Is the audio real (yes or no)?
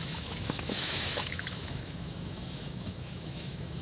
no